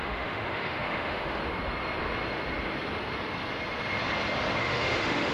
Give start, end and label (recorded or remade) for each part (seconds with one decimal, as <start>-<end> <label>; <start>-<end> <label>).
0.0-1.4 remade; 1.4-4.6 recorded; 4.6-5.3 remade